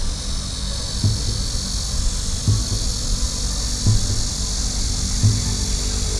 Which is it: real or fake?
real